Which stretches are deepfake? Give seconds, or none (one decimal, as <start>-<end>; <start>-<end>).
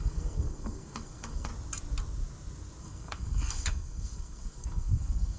0.0-1.5; 2.8-5.4